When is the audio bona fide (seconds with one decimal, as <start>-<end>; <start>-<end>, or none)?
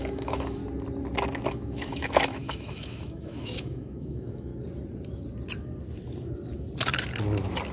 0.6-1.5; 4.5-7.7